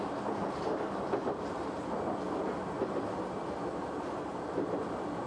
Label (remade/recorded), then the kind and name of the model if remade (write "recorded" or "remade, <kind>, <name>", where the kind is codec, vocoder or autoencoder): recorded